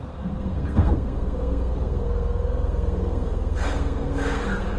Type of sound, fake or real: fake